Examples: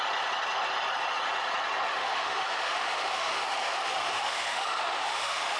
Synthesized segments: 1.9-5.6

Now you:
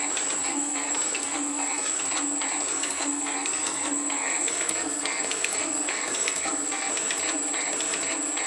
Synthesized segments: 0.5-2.0; 2.7-6.9

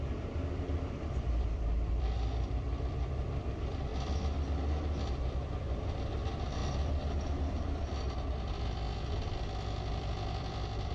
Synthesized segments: 0.0-3.9; 5.2-6.6; 7.1-10.9

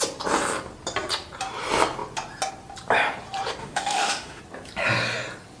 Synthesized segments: 3.6-4.4

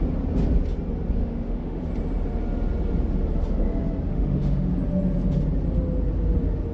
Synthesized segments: 1.2-1.9; 4.1-4.7

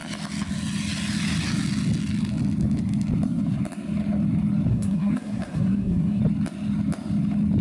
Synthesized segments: 4.7-6.2

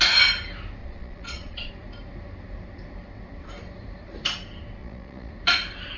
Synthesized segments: 0.8-1.7; 4.8-5.3